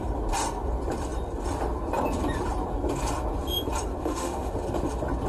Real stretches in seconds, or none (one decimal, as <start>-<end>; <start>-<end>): 0.0-4.0; 4.5-5.3